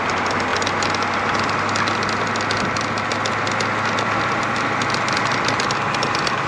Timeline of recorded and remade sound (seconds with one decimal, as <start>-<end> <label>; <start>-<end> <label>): 0.0-6.5 recorded